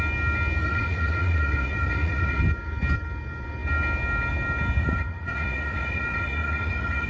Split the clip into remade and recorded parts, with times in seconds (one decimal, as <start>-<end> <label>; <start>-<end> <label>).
0.0-0.6 recorded; 0.6-2.4 remade; 2.4-4.8 recorded; 4.8-7.1 remade